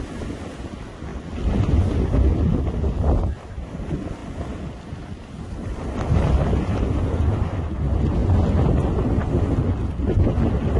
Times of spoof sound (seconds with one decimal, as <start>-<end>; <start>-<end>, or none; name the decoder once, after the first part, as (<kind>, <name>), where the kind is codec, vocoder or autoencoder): none